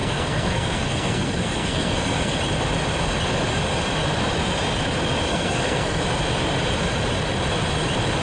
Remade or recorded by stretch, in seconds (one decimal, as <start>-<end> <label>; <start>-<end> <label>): 0.0-2.4 remade; 2.4-5.3 recorded; 5.3-6.0 remade; 6.0-8.2 recorded